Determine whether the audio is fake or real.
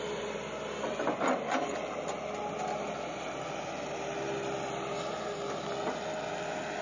real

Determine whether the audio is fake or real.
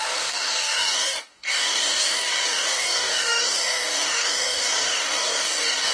fake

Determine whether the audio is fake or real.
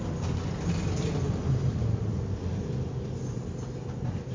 real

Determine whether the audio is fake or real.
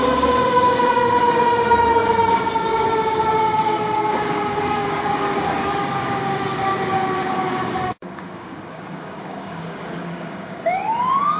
fake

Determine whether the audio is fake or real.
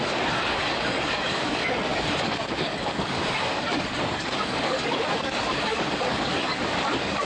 fake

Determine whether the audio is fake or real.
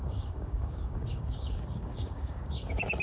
fake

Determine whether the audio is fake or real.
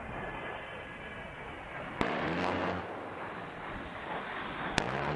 real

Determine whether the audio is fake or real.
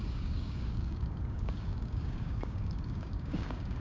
fake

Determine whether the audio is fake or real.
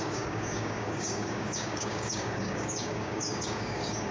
fake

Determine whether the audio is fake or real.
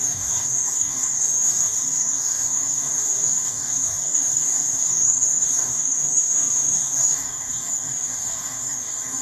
fake